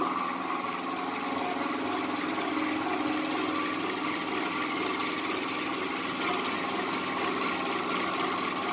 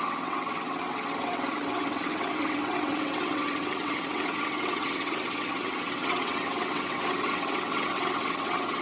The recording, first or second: first